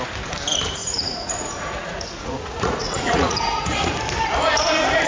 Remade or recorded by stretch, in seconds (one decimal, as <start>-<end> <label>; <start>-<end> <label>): 0.0-0.8 recorded; 0.8-3.9 remade; 3.9-5.1 recorded